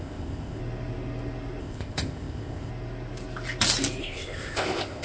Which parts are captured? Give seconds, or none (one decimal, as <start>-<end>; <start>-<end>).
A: 0.6-1.6; 2.7-4.0

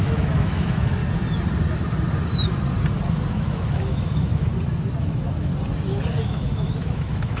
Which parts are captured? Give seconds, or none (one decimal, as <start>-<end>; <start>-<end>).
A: 1.0-3.3; 4.5-5.0; 5.5-6.2

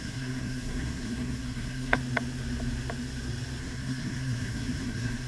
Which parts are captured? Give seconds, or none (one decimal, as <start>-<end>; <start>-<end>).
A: 2.0-3.6

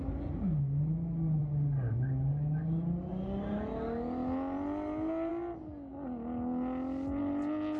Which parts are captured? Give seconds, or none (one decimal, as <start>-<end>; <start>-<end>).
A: 0.0-7.8

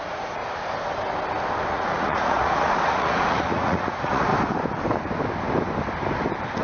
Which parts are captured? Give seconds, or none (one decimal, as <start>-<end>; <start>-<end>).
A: 0.4-1.7; 4.3-6.6

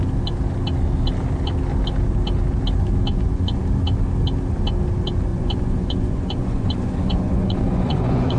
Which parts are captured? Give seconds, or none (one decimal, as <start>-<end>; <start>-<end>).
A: 0.0-3.1; 3.6-5.3